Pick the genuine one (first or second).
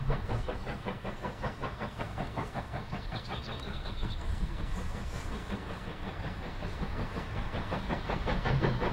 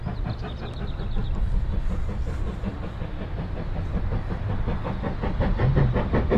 second